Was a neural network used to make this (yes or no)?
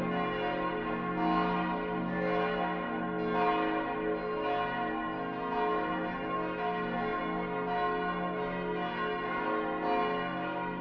no